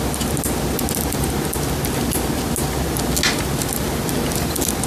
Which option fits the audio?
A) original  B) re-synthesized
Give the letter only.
A